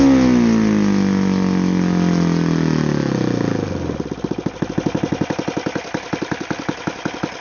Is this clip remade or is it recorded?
recorded